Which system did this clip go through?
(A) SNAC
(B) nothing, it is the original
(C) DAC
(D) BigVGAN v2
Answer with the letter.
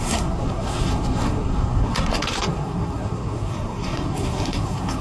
A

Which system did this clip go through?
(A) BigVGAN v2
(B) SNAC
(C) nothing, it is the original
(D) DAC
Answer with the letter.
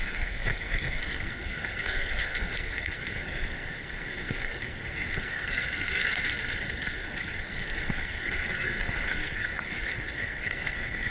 B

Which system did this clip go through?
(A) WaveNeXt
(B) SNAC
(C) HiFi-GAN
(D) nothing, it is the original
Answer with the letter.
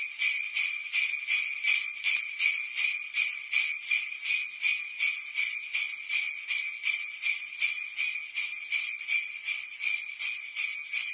D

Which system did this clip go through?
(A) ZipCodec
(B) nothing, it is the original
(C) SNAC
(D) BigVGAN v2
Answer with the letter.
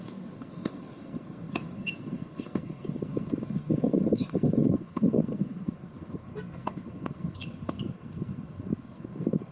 C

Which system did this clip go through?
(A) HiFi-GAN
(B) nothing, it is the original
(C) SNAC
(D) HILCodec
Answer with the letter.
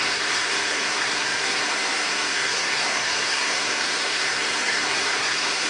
C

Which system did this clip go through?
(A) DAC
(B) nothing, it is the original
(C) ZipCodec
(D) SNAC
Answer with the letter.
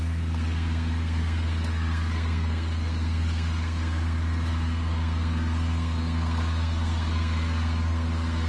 D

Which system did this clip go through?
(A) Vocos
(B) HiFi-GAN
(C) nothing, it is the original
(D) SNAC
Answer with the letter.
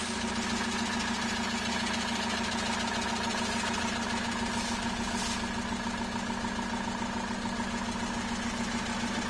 C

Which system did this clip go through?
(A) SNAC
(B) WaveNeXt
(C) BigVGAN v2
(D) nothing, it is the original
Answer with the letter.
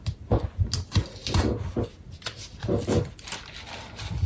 D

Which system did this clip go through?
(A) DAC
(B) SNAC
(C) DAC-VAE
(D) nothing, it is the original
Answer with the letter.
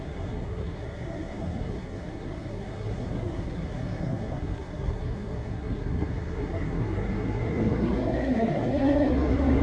B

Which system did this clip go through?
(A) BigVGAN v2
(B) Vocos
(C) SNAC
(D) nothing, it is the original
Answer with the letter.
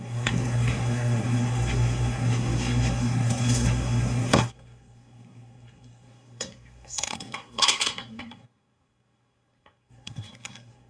C